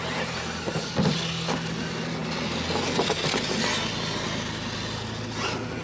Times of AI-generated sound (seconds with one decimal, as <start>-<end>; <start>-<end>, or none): none